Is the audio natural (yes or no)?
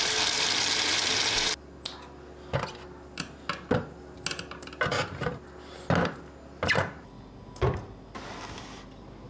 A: yes